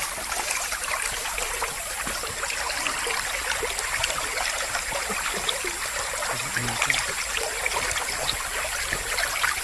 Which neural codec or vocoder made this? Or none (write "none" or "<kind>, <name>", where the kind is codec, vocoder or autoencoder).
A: none